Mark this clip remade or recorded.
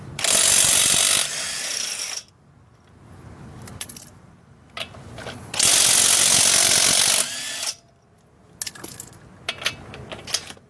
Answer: recorded